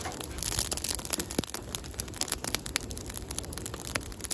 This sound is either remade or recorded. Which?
recorded